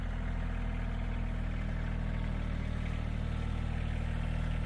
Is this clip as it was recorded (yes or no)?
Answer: yes